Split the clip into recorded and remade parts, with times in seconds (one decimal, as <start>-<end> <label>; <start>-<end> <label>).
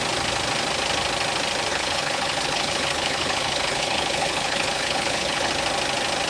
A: 0.0-1.7 recorded; 1.7-5.5 remade; 5.5-6.3 recorded